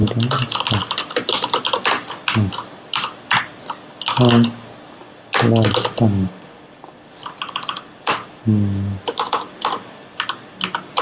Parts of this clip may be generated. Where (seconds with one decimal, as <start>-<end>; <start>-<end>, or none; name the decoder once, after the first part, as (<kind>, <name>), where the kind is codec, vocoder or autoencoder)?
none